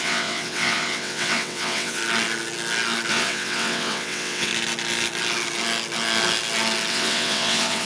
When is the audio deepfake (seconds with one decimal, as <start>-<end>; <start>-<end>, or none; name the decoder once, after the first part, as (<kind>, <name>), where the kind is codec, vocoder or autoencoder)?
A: 0.0-2.0 (vocoder, WaveNeXt); 3.1-4.5; 6.9-7.8